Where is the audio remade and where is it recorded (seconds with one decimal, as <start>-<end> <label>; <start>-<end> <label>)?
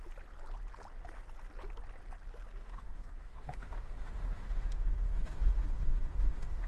0.0-2.6 recorded; 2.6-6.7 remade